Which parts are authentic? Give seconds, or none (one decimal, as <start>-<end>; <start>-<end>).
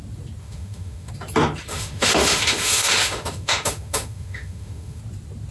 0.0-0.4; 1.1-1.7; 5.0-5.5